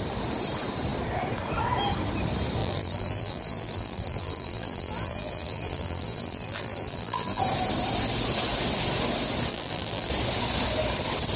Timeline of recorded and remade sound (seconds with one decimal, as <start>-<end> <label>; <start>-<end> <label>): 0.0-2.6 recorded; 2.6-7.4 remade; 7.4-9.5 recorded; 9.5-10.1 remade; 10.1-11.4 recorded